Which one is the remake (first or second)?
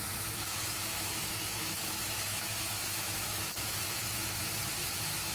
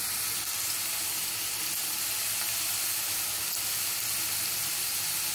first